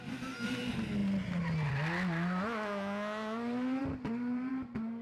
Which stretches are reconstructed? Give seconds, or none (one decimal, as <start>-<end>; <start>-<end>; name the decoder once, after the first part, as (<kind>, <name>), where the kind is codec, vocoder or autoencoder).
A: 3.8-4.5 (vocoder, BigVGAN v2)